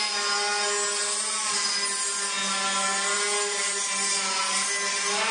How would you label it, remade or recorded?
recorded